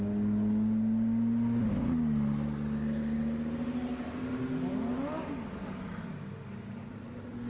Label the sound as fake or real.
real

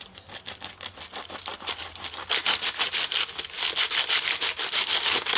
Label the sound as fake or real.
real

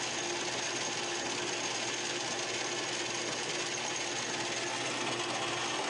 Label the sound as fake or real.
real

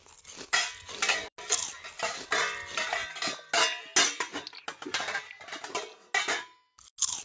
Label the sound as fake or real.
real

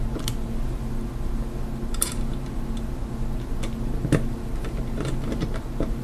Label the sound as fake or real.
real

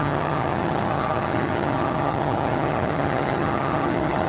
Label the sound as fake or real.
fake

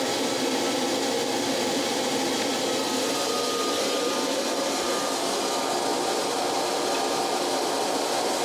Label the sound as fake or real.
real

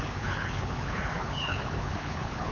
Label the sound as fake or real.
fake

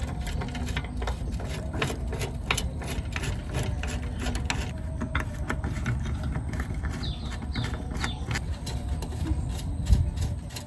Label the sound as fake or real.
real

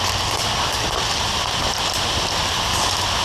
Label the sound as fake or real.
real